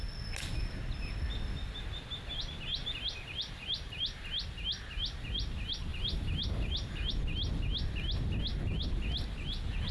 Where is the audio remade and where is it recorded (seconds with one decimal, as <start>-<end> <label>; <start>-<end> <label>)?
0.0-2.8 recorded; 2.8-4.0 remade; 4.0-5.9 recorded; 5.9-7.1 remade; 7.1-9.9 recorded